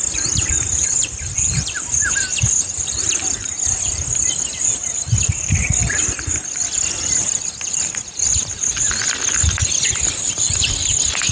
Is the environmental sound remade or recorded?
remade